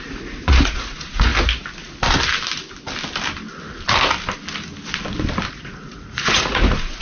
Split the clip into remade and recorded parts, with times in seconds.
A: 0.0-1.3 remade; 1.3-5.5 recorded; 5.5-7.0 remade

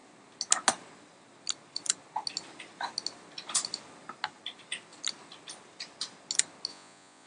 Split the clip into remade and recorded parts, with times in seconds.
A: 0.0-6.7 recorded; 6.7-7.3 remade

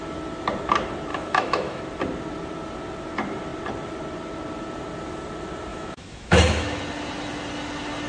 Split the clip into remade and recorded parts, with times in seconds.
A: 0.0-1.1 recorded; 1.1-1.8 remade; 1.8-5.7 recorded; 5.7-6.8 remade; 6.8-8.1 recorded